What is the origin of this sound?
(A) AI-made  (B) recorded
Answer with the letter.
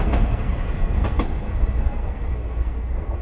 A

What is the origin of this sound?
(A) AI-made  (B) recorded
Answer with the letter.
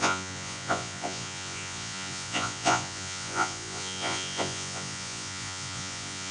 A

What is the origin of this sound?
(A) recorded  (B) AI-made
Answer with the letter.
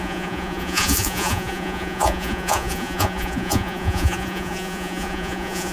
B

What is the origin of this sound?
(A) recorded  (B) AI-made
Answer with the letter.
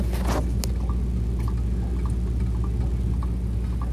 A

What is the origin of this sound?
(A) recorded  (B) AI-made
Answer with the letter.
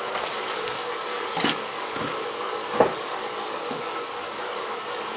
B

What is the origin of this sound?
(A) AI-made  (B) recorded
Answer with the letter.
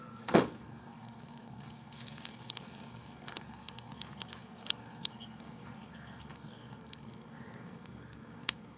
A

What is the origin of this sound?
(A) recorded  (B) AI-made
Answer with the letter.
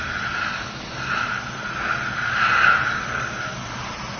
A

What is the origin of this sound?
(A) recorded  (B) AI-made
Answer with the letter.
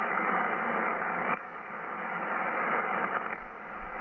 B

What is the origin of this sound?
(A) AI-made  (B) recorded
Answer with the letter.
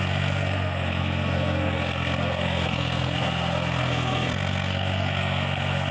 A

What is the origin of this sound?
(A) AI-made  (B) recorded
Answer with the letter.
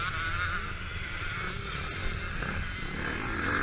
B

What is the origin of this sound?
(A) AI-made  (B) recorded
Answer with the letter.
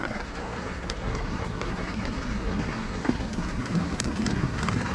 A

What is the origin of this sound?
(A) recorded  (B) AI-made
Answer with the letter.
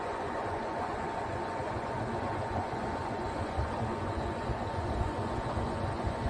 B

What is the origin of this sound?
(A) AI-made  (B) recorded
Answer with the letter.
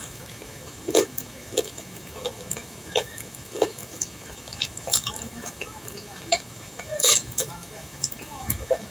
A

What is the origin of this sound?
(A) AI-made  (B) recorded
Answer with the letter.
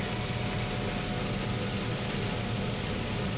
B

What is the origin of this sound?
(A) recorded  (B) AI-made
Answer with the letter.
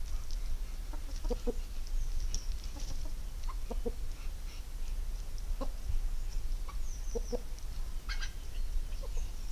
A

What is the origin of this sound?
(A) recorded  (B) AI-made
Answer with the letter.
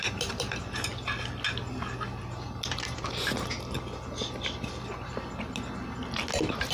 A